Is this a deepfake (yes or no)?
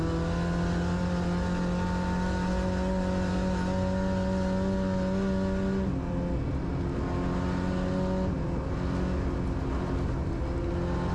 no